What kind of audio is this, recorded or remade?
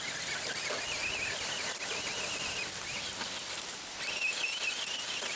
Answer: recorded